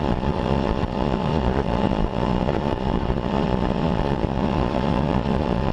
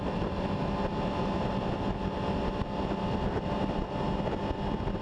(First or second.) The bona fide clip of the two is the second